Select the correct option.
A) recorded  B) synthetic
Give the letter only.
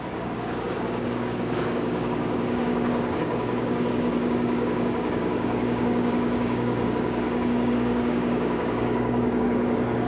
B